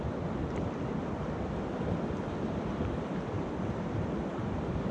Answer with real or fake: fake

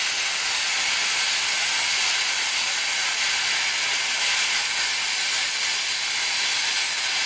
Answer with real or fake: real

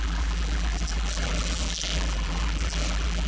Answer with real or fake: fake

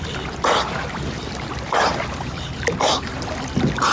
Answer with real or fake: real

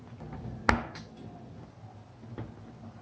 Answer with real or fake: real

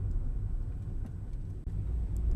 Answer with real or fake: real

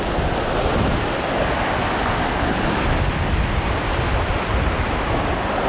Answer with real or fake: real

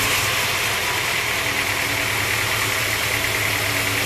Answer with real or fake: real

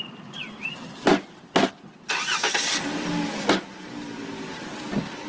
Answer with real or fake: real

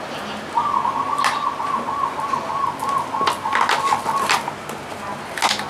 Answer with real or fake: real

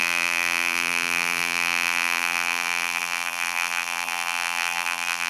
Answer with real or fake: fake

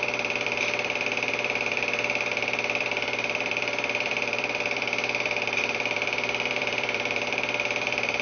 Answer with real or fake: fake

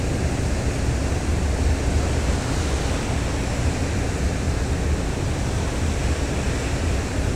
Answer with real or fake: real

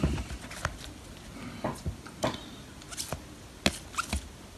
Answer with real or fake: real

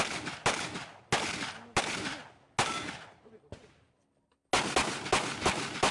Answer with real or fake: real